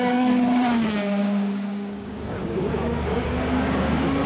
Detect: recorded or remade remade